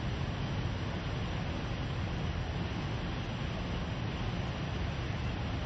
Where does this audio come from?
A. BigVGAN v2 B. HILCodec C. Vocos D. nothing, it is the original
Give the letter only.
D